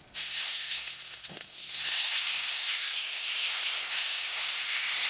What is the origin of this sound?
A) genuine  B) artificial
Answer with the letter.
B